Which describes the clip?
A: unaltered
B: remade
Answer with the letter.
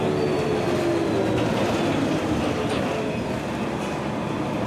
A